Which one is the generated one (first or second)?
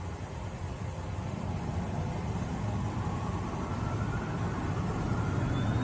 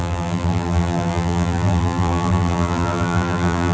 second